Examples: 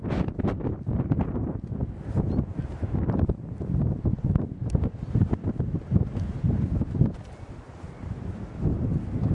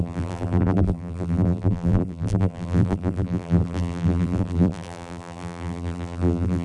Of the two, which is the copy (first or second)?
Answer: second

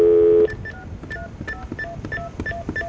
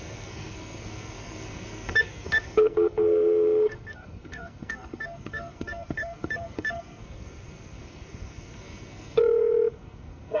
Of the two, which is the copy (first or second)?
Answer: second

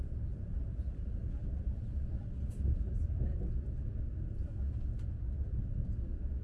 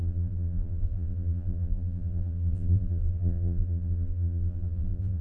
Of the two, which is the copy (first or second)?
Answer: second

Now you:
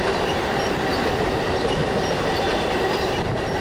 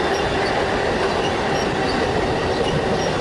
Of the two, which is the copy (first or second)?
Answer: first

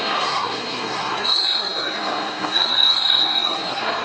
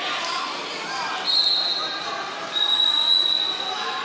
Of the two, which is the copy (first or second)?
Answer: first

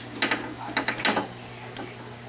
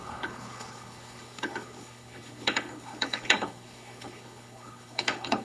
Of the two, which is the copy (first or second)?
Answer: second